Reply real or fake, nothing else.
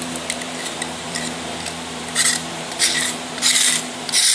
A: fake